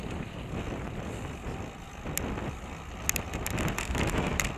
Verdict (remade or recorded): recorded